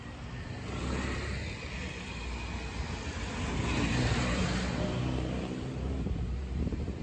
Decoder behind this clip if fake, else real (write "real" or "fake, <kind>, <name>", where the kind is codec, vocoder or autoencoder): real